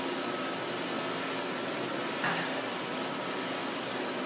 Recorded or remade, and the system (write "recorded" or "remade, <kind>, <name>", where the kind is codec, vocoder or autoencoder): recorded